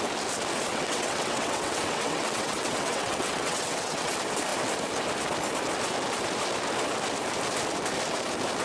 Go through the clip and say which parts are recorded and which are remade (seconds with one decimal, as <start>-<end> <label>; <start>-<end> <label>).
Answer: 0.0-0.7 recorded; 0.7-4.1 remade; 4.1-8.6 recorded

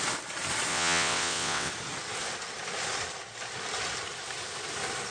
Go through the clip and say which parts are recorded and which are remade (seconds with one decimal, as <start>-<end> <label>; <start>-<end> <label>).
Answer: 0.0-0.7 recorded; 0.7-1.7 remade; 1.7-5.1 recorded

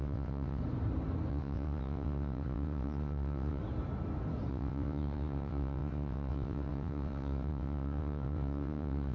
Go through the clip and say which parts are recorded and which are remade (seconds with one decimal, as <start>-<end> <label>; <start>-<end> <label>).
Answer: 0.0-0.6 remade; 0.6-1.3 recorded; 1.3-3.6 remade; 3.6-4.5 recorded; 4.5-9.1 remade